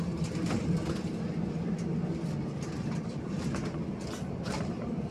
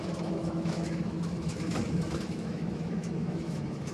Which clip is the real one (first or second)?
first